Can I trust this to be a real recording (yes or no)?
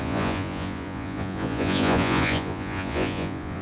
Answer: no